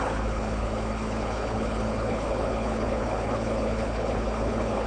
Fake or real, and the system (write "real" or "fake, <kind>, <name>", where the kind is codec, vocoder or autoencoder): fake, codec, HILCodec